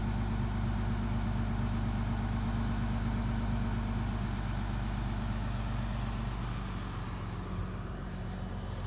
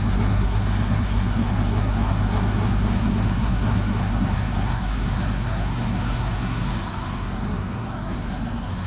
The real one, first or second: first